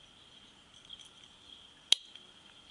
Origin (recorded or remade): recorded